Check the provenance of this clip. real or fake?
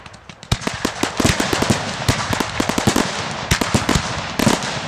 real